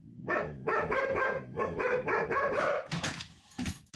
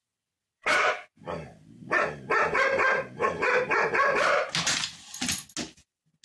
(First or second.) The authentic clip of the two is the second